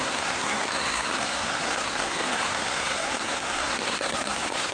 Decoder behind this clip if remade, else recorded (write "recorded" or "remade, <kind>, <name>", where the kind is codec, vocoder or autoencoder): remade, codec, SNAC